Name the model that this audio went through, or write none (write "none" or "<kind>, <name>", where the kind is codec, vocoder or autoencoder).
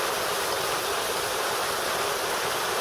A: vocoder, BigVGAN v2